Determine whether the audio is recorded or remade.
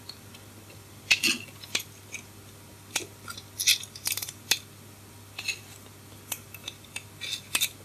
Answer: recorded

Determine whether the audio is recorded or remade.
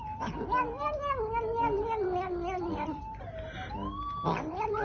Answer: recorded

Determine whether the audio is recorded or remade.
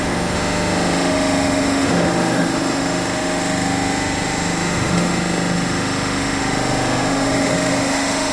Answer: remade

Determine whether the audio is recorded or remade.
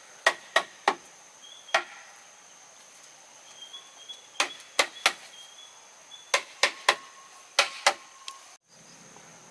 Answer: recorded